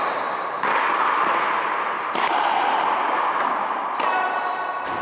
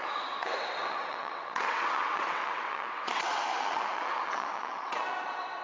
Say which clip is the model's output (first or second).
second